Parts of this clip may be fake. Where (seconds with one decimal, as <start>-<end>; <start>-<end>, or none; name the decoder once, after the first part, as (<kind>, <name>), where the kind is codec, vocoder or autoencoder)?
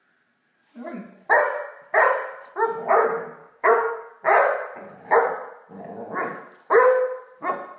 3.4-4.1 (codec, DAC)